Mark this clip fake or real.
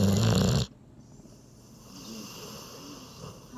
real